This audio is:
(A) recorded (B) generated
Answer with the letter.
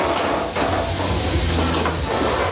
A